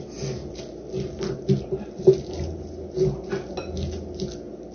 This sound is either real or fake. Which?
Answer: real